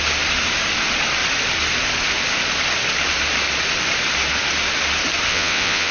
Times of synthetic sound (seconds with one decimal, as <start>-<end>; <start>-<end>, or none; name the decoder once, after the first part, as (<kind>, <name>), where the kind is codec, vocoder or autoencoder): 5.3-5.9 (vocoder, WaveNeXt)